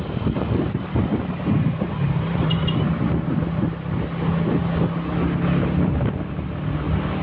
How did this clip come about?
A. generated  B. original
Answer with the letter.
B